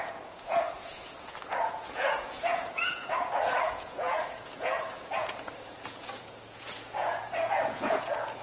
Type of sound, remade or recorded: remade